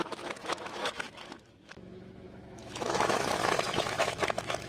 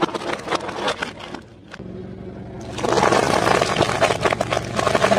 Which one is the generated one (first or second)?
first